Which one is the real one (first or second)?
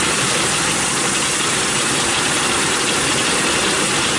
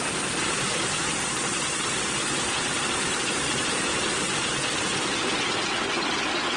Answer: first